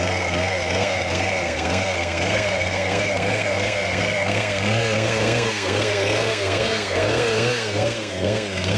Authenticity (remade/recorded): remade